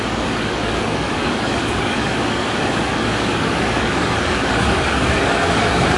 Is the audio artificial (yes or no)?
yes